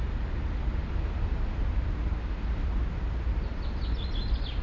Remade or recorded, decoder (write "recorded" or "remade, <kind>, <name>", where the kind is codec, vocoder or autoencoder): recorded